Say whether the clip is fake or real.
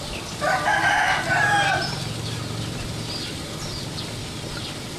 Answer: real